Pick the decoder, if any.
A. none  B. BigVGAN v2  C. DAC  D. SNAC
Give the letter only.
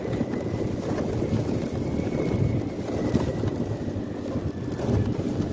A